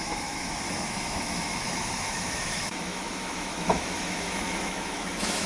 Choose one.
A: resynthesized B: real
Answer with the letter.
A